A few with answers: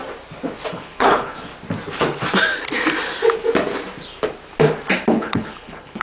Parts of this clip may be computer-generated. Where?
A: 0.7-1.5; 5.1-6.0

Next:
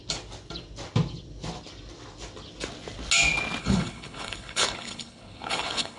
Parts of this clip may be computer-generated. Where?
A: 3.6-6.0

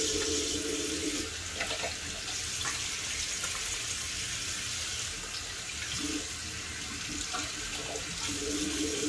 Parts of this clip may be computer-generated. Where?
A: none

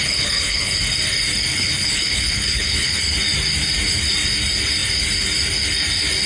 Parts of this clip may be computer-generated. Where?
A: 0.0-0.7; 1.5-3.0

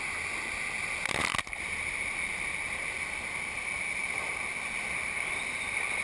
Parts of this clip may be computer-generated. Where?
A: none

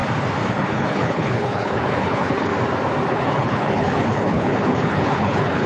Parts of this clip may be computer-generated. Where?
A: 0.5-2.5; 3.1-5.7

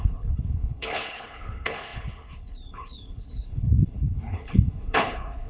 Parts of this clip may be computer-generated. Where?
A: 0.0-5.5